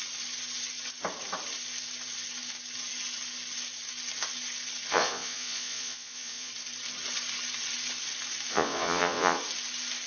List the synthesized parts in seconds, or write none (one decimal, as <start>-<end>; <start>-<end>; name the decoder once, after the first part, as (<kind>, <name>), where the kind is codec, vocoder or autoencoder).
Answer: 4.9-6.5 (vocoder, Vocos); 8.5-9.4